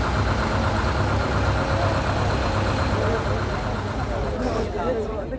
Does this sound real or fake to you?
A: real